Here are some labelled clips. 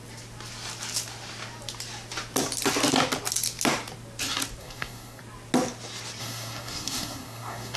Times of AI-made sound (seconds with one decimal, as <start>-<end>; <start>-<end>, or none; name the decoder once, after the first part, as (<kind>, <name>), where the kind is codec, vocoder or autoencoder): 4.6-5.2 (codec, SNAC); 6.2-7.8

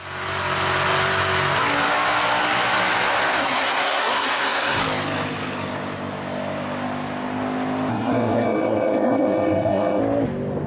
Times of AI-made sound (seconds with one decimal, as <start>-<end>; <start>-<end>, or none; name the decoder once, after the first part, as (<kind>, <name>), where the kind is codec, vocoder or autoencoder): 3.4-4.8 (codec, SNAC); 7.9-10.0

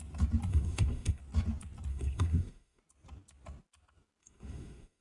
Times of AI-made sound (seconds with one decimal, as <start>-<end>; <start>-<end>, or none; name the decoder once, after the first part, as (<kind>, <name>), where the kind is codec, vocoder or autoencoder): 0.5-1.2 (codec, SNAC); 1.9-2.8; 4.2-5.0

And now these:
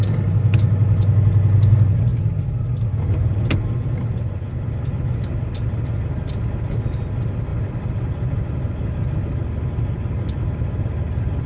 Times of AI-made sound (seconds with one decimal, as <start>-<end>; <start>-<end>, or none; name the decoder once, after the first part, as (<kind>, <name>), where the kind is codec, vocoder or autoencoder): none

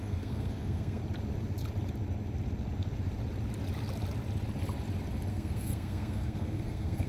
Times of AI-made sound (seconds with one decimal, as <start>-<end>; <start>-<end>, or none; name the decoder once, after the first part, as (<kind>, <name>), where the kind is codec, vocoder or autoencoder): 0.0-1.0 (codec, SNAC); 5.3-7.1

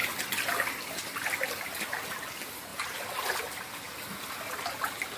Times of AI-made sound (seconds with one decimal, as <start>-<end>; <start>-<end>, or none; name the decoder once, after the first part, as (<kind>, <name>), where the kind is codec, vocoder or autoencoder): none